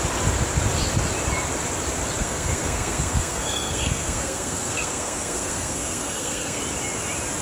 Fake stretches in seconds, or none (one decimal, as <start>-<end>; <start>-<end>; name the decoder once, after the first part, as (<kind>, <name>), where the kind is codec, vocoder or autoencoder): 2.2-6.6 (codec, SNAC)